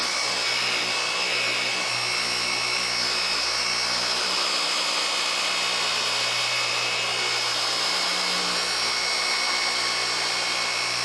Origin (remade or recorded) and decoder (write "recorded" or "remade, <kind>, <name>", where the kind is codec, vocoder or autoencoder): recorded